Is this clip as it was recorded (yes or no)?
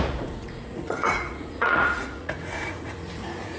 no